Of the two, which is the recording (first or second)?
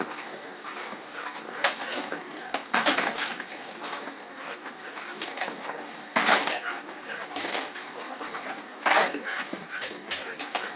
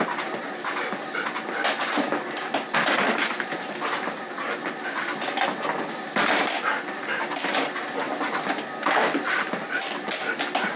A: second